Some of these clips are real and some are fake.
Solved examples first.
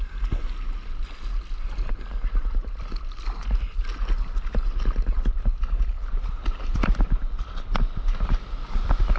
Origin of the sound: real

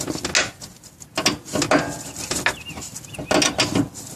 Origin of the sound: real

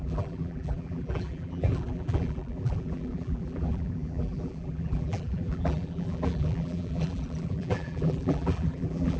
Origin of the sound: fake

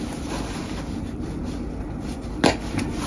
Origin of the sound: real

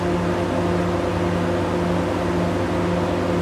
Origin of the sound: real